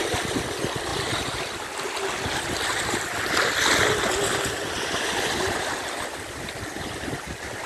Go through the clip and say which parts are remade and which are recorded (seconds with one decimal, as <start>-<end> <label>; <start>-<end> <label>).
0.0-7.7 recorded